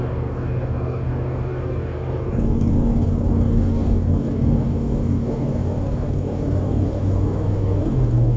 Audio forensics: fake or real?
fake